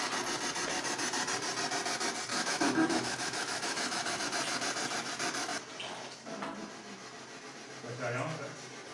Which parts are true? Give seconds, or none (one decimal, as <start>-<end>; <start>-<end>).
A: 0.0-2.3; 4.2-8.9